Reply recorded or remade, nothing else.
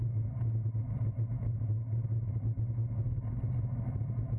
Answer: recorded